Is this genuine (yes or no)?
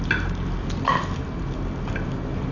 yes